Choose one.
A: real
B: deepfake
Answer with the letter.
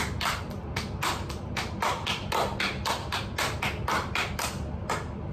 A